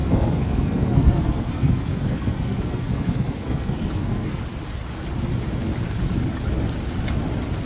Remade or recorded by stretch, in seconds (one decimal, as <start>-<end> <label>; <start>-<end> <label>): 0.0-4.4 remade; 4.4-7.7 recorded